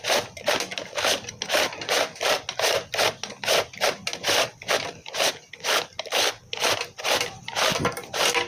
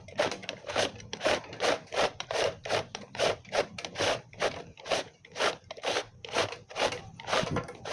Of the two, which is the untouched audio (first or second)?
first